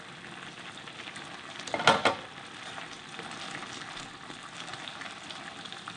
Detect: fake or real real